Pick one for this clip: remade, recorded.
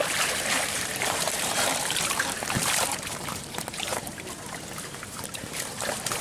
remade